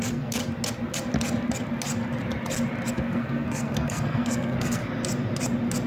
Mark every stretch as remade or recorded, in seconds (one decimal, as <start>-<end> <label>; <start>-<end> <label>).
0.0-0.4 remade; 0.4-2.9 recorded; 2.9-4.8 remade; 4.8-5.9 recorded